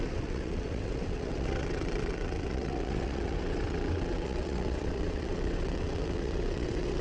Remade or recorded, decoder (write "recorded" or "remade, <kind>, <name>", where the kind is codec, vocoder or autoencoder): remade, vocoder, WaveNeXt